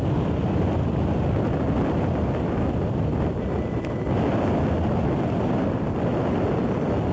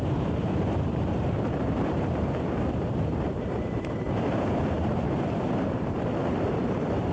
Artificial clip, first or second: second